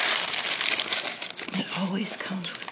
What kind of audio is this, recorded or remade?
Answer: recorded